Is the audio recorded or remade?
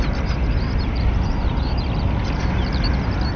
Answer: recorded